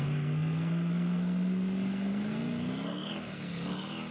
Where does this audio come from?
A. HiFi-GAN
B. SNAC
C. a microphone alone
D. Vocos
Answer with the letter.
B